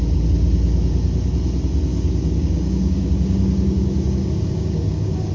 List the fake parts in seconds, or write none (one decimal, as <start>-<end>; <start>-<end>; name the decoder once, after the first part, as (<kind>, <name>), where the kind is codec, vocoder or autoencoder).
1.9-5.3 (codec, DAC)